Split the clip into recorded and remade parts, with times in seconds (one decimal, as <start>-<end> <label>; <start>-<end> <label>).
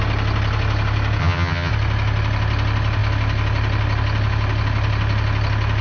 0.0-1.2 recorded; 1.2-1.7 remade; 1.7-5.8 recorded